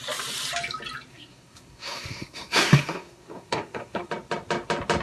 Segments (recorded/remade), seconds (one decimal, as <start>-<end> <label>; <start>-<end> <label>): 0.0-1.1 recorded; 1.1-4.1 remade; 4.1-5.0 recorded